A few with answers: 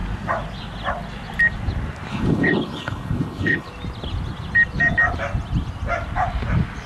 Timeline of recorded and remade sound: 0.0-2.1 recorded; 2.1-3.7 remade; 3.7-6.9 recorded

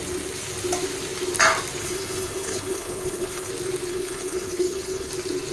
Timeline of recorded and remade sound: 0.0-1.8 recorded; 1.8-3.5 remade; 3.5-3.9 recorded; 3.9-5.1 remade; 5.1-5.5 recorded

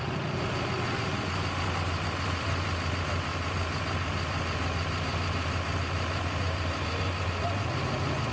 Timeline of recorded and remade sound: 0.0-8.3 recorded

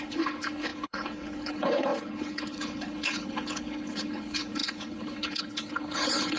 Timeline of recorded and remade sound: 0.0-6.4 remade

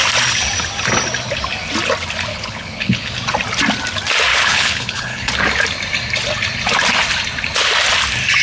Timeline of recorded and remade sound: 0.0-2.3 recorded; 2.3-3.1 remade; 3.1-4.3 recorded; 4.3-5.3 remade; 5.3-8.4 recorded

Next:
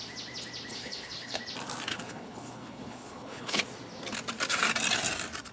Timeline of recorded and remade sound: 0.0-0.7 recorded; 0.7-1.4 remade; 1.4-1.9 recorded; 1.9-3.6 remade; 3.6-5.5 recorded